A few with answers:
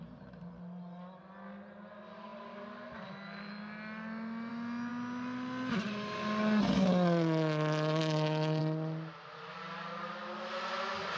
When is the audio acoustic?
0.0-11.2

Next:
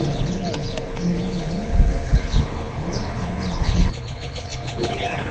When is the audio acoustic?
none

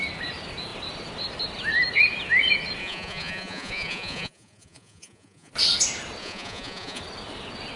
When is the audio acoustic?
0.0-2.8; 5.5-6.2; 7.0-7.8

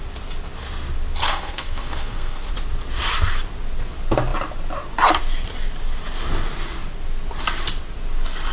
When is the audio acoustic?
0.0-1.2; 2.5-8.5